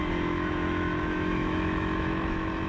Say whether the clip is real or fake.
fake